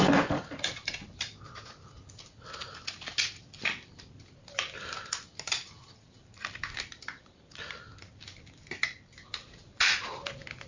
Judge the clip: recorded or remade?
recorded